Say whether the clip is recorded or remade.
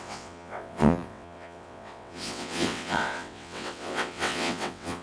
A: remade